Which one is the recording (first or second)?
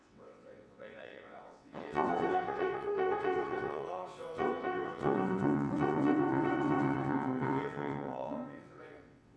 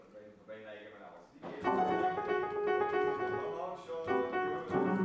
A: second